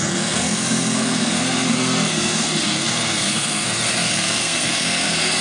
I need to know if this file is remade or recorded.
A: remade